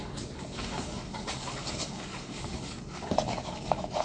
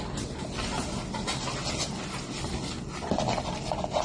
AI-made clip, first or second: first